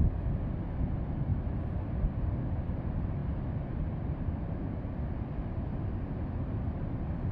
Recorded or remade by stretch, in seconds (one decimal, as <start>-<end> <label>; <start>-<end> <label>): 0.0-7.3 recorded